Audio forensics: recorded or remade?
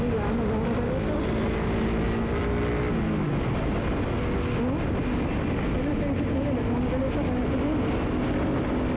recorded